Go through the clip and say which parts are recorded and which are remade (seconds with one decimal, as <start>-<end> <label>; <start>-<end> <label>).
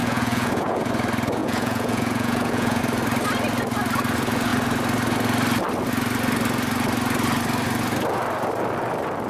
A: 0.0-0.9 remade; 0.9-1.4 recorded; 1.4-2.8 remade; 2.8-9.3 recorded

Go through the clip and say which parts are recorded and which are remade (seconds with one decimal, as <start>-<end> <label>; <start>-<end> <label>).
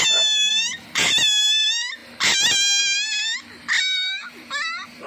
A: 0.0-0.5 recorded; 0.5-1.2 remade; 1.2-3.6 recorded; 3.6-5.1 remade